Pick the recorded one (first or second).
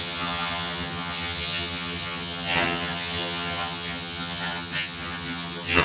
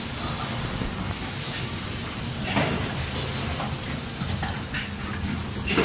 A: second